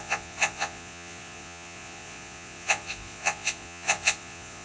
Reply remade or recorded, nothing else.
remade